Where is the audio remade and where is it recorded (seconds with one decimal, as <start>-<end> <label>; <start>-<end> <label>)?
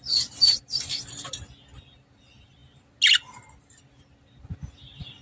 0.0-5.2 recorded